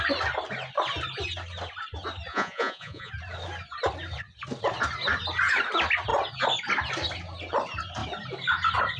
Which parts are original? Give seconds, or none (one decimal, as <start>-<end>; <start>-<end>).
0.0-2.3; 3.1-9.0